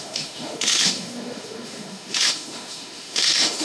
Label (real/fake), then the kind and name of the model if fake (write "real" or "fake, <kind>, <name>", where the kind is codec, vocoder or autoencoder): fake, autoencoder, DAC-VAE